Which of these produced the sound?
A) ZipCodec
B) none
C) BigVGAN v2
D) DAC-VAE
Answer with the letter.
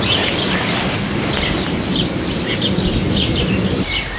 C